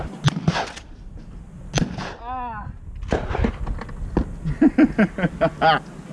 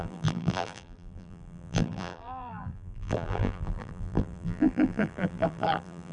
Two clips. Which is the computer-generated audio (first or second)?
second